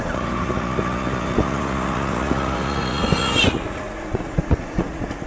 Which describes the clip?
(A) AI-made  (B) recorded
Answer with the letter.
A